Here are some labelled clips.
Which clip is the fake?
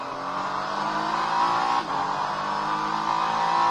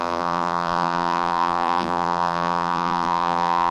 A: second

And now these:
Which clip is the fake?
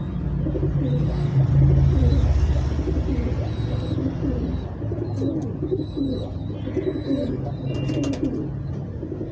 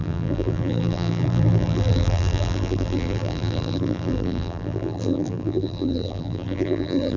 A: second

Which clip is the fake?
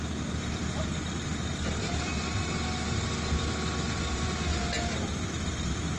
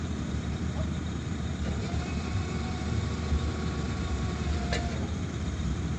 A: second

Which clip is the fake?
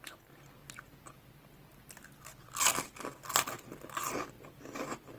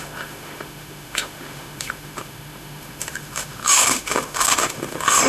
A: second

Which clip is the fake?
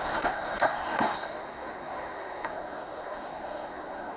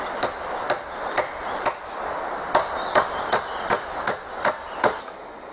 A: first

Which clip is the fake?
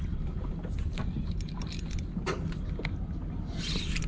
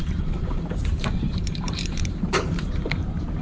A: second